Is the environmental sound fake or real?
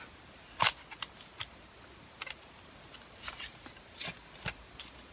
real